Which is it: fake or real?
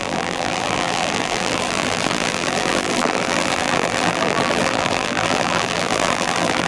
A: fake